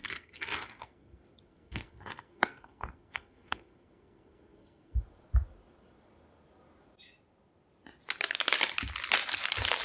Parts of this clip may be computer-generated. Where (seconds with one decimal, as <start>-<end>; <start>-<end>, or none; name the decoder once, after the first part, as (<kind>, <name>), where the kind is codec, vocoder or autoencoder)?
0.0-5.0 (codec, SNAC)